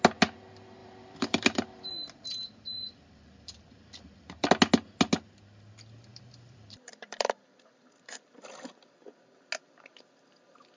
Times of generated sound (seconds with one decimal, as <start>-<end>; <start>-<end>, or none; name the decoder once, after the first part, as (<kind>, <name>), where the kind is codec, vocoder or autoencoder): 0.8-4.5 (vocoder, BigVGAN v2); 6.1-8.2